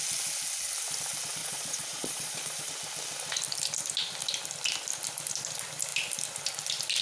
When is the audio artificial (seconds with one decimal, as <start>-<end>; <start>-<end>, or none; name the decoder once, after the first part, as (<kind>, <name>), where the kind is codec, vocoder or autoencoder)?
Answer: 1.4-2.7 (vocoder, Vocos)